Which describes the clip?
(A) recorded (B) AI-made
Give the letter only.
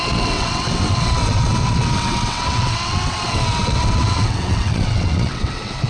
B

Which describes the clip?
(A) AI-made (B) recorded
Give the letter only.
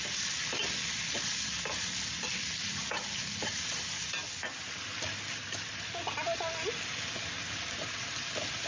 B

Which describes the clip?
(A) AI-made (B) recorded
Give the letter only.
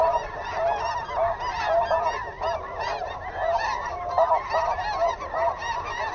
B